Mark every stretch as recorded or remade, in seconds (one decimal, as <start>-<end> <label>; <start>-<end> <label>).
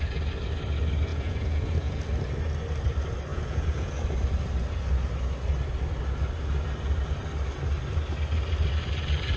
0.0-1.1 recorded; 1.1-2.0 remade; 2.0-3.3 recorded; 3.3-3.9 remade; 3.9-9.4 recorded